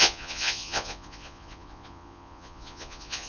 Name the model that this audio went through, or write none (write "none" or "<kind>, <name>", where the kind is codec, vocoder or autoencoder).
vocoder, Vocos